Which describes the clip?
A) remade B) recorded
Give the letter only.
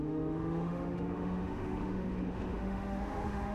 A